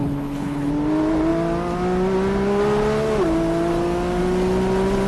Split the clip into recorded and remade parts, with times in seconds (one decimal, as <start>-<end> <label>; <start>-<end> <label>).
0.0-0.7 remade; 0.7-5.1 recorded